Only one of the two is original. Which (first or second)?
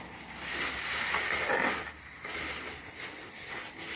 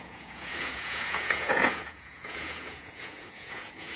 first